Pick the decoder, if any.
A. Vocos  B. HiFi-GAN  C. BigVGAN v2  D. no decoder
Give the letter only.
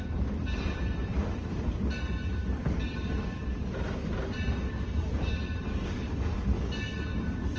D